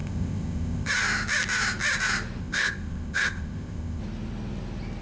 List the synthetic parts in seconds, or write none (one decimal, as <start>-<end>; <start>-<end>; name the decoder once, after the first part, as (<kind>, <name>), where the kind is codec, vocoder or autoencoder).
0.0-0.9 (codec, ZipCodec); 2.4-4.0